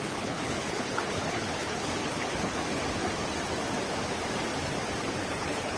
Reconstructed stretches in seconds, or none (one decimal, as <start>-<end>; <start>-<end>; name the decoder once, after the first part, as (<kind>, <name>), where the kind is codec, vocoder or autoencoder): 0.0-2.6 (codec, HILCodec); 5.3-5.8